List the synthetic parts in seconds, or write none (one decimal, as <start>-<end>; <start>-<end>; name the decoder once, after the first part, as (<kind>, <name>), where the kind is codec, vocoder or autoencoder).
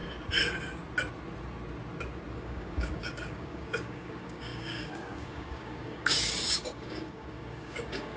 2.3-8.2 (codec, DAC)